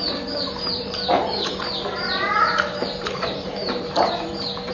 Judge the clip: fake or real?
fake